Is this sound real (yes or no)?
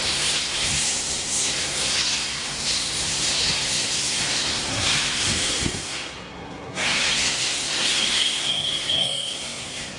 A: no